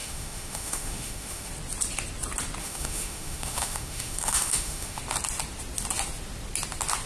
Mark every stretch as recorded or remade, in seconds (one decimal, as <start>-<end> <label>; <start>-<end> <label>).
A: 0.0-1.5 remade; 1.5-2.6 recorded; 2.6-5.0 remade; 5.0-7.1 recorded